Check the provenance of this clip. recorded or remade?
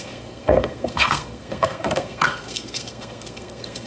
remade